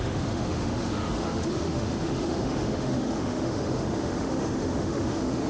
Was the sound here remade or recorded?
remade